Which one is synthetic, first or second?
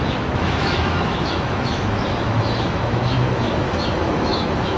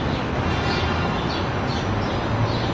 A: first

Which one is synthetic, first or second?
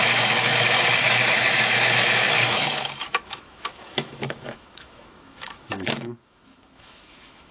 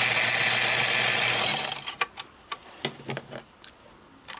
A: first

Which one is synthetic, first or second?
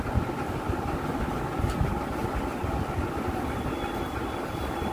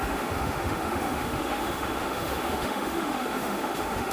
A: second